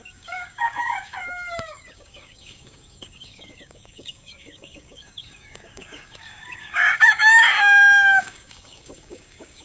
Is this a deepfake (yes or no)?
yes